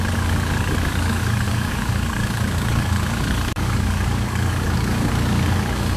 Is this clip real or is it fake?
fake